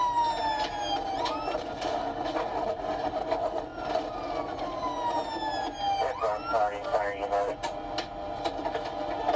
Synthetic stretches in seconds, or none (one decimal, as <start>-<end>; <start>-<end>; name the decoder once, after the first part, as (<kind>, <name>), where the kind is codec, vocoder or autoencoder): none